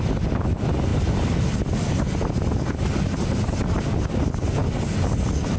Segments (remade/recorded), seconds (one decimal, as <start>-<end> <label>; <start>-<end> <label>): 0.0-5.6 recorded